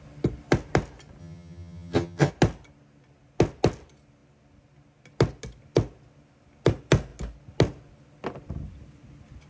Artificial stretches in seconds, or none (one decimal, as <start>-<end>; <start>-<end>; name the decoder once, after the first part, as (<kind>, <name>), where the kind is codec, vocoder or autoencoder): 1.2-2.3 (vocoder, HiFi-GAN)

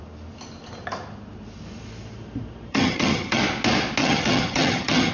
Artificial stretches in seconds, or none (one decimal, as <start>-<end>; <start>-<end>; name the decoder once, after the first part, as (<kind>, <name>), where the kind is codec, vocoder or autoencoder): 2.7-3.4 (vocoder, HiFi-GAN); 4.0-5.1

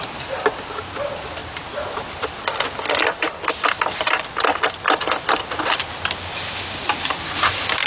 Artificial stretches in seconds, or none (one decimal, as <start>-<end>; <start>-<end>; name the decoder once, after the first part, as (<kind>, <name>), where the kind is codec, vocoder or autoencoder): none

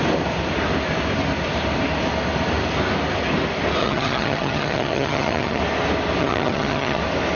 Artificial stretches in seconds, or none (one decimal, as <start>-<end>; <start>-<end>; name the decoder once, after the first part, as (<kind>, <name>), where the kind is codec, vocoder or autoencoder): 3.8-5.6 (vocoder, HiFi-GAN); 6.2-7.0